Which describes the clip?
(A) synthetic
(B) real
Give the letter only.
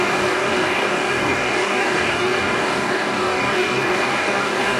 A